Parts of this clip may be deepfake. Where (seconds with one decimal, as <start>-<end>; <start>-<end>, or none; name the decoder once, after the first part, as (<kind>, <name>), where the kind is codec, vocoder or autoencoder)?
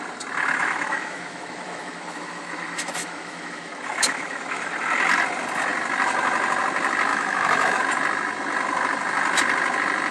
0.6-4.7 (autoencoder, DAC-VAE); 7.1-7.8